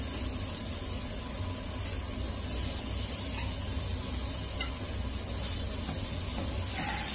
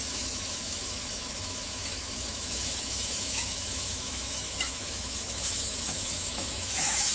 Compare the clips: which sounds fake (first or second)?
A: second